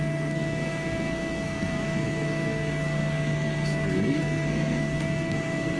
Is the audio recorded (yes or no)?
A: no